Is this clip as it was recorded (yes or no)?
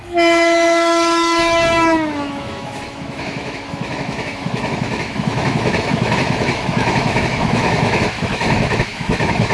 no